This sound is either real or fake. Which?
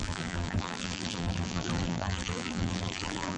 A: fake